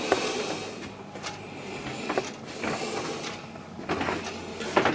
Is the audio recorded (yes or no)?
yes